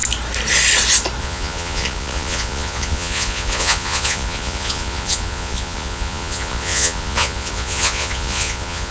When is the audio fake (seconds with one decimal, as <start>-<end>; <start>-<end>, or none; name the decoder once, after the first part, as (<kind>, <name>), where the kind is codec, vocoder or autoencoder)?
1.2-8.9 (vocoder, Vocos)